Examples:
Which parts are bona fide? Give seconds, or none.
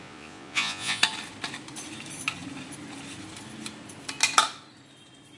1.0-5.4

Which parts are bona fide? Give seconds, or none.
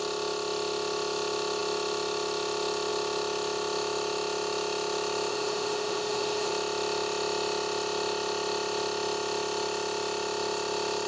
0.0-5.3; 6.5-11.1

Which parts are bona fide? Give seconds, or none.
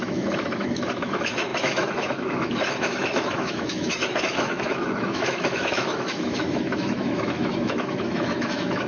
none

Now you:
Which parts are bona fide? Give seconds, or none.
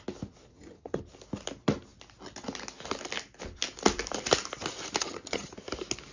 0.0-0.5; 1.0-5.0; 5.5-6.1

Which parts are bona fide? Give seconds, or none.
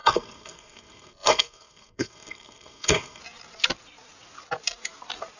3.2-5.4